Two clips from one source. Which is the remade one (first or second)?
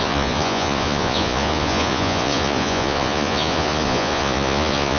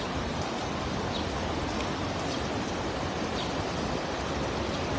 first